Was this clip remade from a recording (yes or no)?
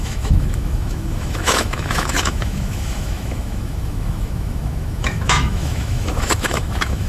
yes